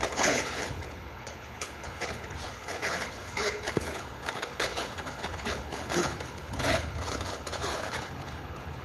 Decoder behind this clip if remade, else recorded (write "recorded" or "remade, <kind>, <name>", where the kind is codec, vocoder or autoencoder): remade, codec, HILCodec